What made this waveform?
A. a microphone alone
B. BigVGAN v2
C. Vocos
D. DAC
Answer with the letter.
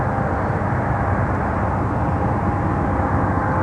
A